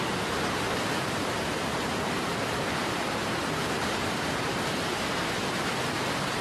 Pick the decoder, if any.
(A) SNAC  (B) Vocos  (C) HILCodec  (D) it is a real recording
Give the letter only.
D